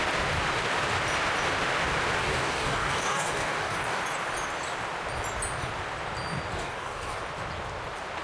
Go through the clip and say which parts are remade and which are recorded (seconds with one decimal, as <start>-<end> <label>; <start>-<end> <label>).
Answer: 0.0-2.2 recorded; 2.2-4.0 remade; 4.0-6.5 recorded; 6.5-7.2 remade; 7.2-8.2 recorded

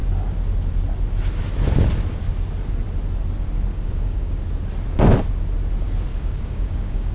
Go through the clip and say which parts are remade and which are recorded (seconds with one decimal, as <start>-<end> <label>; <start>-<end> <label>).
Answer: 0.0-3.7 recorded; 3.7-4.4 remade; 4.4-6.1 recorded; 6.1-7.1 remade

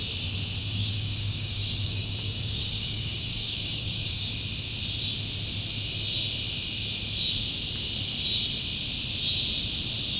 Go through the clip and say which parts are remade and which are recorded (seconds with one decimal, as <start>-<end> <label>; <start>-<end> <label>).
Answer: 0.0-0.6 recorded; 0.6-4.3 remade; 4.3-10.2 recorded